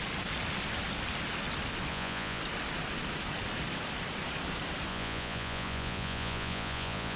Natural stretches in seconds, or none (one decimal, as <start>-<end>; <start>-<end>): 0.0-1.9; 2.4-4.9